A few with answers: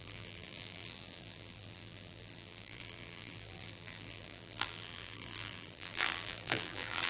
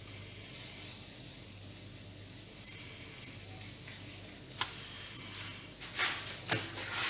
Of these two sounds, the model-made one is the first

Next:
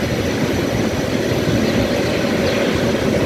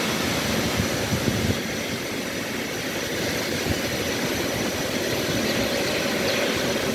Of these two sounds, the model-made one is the second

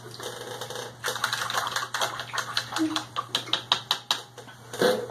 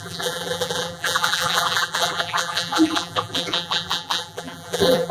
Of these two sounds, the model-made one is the second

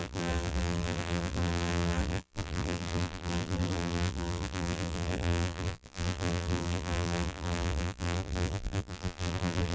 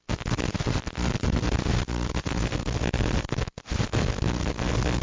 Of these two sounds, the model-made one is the first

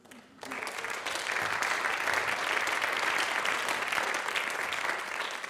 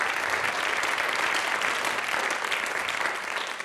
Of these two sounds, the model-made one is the second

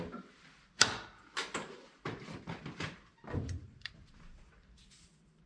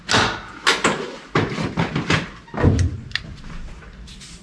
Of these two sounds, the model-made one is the first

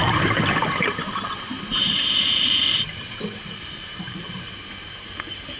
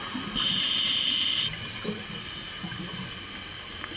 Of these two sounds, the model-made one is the first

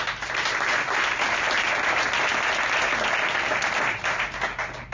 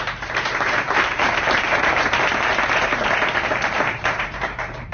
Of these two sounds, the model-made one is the second